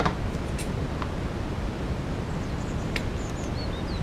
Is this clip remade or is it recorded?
recorded